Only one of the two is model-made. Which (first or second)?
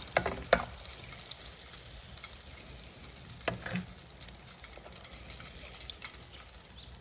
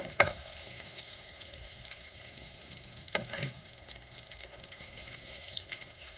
second